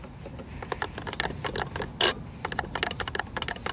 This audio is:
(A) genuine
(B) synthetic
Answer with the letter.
A